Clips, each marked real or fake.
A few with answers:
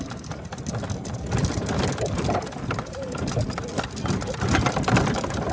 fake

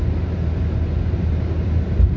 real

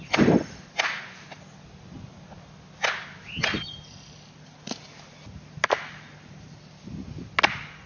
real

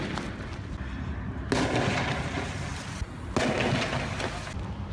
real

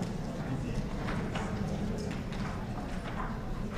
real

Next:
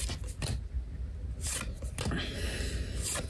real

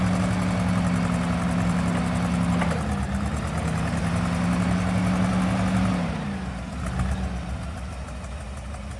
real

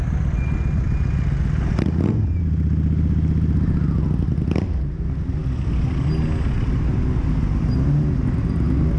real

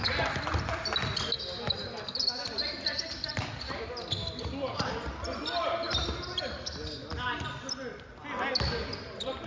real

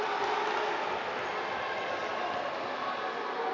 real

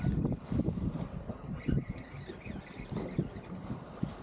real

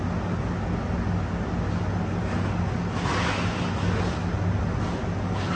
real